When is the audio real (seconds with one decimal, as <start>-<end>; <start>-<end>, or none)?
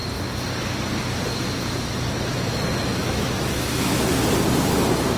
0.0-2.3; 4.2-5.2